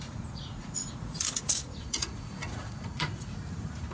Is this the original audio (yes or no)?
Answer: no